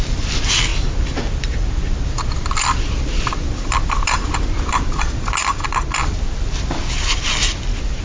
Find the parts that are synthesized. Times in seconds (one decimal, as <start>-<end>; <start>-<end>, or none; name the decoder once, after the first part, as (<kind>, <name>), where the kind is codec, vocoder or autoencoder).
none